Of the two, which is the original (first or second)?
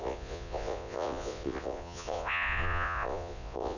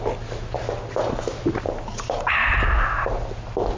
second